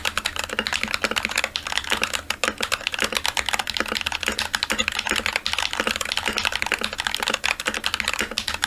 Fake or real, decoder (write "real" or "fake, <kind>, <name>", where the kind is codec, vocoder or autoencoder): real